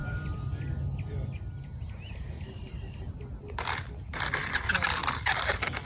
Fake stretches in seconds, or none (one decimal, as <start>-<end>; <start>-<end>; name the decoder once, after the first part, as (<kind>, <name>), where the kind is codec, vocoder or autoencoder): 0.0-0.6 (vocoder, BigVGAN v2)